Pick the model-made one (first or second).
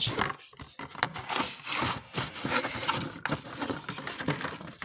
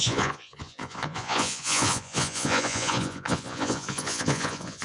second